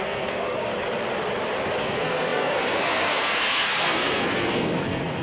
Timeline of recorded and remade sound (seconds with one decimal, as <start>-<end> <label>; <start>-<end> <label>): 0.0-0.7 remade; 0.7-1.8 recorded; 1.8-5.2 remade